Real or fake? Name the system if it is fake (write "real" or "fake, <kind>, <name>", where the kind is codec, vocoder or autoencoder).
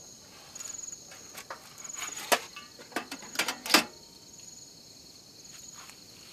real